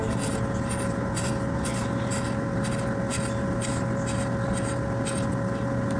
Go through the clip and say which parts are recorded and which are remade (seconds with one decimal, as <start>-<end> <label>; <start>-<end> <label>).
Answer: 0.0-6.0 recorded